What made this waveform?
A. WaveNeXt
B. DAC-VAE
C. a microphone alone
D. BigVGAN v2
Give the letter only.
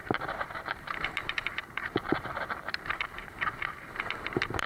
D